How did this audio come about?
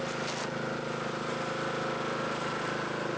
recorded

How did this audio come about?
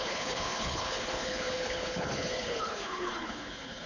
remade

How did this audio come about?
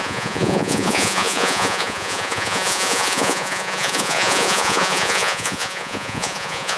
remade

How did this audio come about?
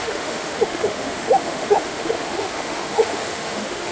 remade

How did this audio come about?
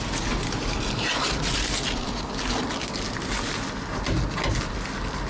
recorded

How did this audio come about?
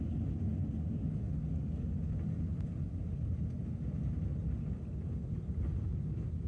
recorded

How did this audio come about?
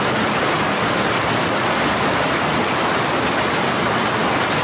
recorded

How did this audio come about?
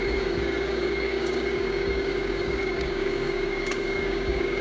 remade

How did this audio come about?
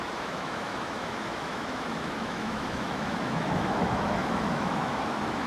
remade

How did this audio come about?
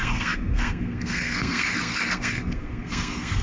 remade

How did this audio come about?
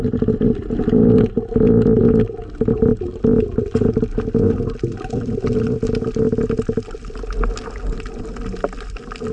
recorded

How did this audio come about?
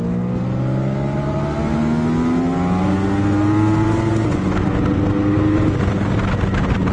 recorded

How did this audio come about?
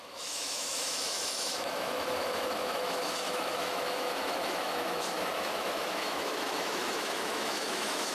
remade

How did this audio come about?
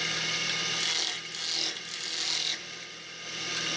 recorded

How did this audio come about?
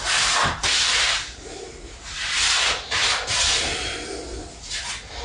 recorded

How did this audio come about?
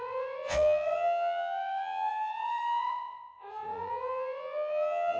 remade